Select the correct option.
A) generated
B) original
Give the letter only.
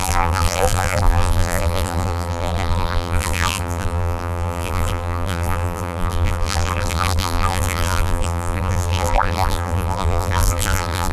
A